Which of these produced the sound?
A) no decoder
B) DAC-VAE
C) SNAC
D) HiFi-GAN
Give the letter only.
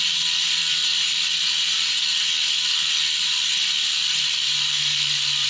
A